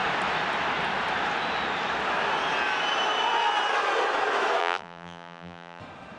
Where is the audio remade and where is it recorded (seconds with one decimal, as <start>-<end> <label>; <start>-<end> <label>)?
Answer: 0.0-4.6 recorded; 4.6-5.8 remade; 5.8-6.2 recorded